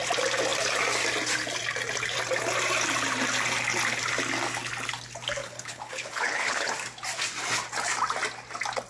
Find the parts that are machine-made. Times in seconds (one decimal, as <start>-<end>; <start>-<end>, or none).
5.4-6.7